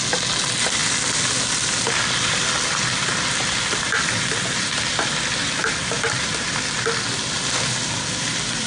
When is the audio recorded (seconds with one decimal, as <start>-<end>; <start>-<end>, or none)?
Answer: 0.0-5.4; 6.5-8.7